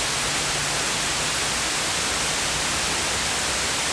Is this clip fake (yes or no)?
no